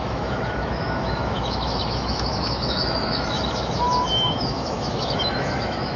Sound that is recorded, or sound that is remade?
remade